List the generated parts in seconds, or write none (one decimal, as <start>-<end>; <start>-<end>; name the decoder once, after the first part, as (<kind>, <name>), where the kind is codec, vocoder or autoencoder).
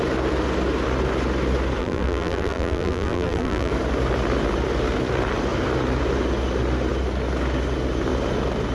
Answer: 1.8-3.7 (vocoder, BigVGAN v2)